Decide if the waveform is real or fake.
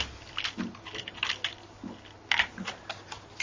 real